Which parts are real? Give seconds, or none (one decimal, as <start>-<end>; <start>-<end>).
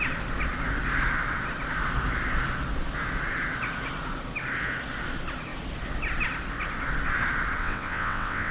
0.0-7.6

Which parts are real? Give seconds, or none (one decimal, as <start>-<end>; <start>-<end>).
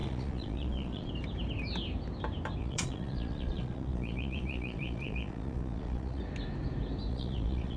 1.1-2.6; 6.2-7.1